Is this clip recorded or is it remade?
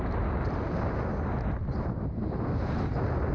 recorded